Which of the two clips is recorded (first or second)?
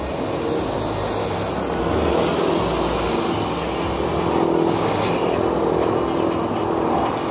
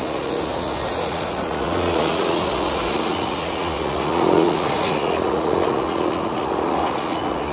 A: first